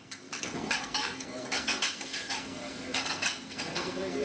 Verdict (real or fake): fake